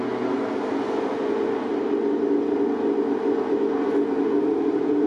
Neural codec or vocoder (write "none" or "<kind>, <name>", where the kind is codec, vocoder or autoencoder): none